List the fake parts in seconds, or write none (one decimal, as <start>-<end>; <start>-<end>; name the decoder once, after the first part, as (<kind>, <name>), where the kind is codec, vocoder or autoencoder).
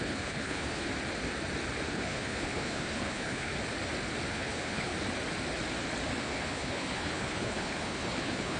0.0-0.9 (codec, HILCodec); 1.9-3.5; 4.3-4.9; 6.2-8.6